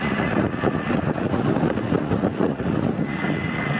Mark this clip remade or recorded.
remade